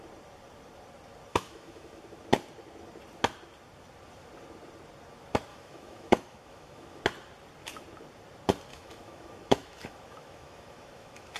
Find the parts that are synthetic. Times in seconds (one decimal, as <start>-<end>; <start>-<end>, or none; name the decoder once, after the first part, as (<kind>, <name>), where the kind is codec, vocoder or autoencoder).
1.3-2.0 (autoencoder, DAC-VAE); 5.5-7.0; 8.7-11.4